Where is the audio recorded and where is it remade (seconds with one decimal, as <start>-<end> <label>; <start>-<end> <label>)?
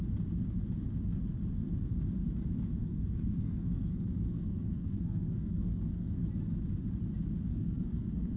0.0-2.8 recorded; 2.8-6.2 remade; 6.2-7.5 recorded; 7.5-8.4 remade